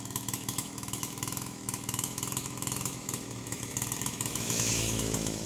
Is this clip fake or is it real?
fake